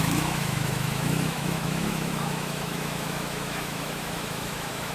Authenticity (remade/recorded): remade